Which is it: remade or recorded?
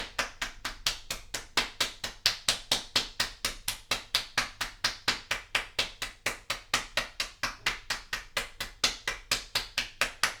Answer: recorded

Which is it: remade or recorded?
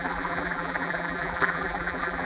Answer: remade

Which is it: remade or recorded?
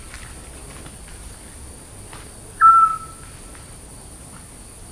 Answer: recorded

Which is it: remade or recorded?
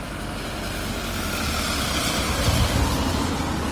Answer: recorded